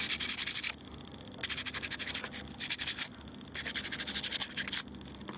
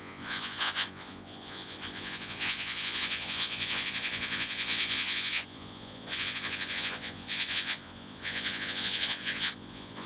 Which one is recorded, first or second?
first